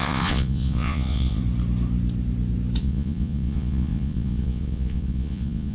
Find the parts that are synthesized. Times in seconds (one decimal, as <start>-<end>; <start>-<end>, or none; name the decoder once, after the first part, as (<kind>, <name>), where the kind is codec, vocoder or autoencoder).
0.0-1.4 (vocoder, Vocos); 2.8-5.7

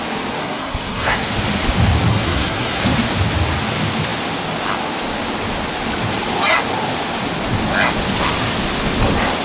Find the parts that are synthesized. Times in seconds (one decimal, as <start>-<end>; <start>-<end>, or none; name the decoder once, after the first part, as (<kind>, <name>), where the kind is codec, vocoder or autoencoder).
0.4-1.3 (codec, SNAC); 2.1-2.8

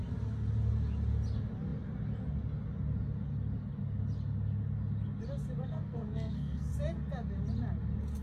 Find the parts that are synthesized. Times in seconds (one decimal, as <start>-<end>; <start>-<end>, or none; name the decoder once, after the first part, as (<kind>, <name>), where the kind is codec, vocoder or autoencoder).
5.6-6.7 (codec, SNAC)

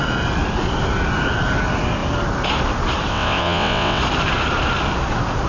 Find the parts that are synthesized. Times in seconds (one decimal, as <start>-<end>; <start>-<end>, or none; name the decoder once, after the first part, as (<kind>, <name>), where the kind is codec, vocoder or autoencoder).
3.1-4.0 (vocoder, WaveNeXt)

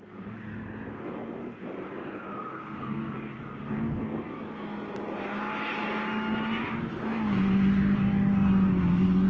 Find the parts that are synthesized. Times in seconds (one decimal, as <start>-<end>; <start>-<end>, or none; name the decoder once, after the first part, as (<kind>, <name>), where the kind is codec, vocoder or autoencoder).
2.5-3.3 (codec, SNAC)